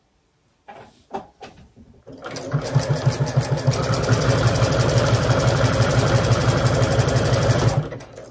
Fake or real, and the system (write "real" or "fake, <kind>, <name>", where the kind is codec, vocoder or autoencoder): real